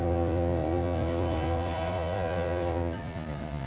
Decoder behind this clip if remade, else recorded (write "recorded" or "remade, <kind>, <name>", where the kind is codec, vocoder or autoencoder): remade, vocoder, Vocos